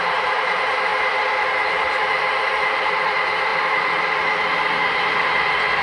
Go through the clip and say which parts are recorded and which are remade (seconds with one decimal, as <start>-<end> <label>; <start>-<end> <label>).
0.0-0.9 remade; 0.9-2.4 recorded; 2.4-3.5 remade; 3.5-5.8 recorded